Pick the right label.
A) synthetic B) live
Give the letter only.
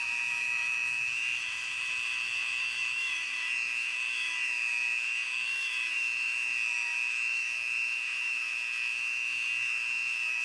A